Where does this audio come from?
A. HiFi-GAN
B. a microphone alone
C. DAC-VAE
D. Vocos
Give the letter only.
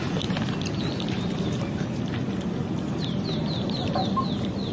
B